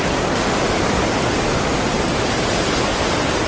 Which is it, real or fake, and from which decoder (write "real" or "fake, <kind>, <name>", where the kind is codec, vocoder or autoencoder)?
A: real